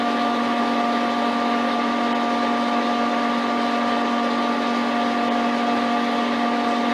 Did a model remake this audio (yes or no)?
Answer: no